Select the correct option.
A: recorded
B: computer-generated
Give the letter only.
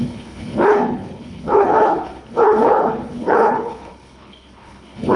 B